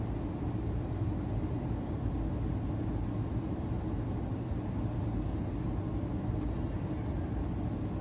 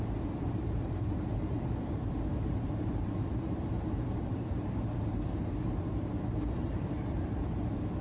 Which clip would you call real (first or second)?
first